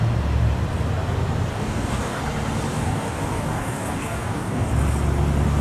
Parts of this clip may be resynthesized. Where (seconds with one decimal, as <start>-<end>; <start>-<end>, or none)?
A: 1.5-2.2; 2.7-4.7